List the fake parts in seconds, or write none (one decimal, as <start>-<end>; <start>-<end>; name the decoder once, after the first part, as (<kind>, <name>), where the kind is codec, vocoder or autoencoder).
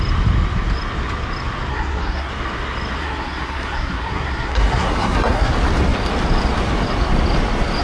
1.7-2.3 (codec, SNAC); 3.0-5.5